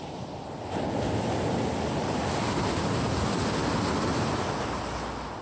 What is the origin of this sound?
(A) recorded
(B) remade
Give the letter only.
A